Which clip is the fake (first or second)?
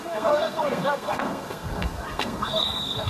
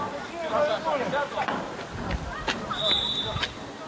first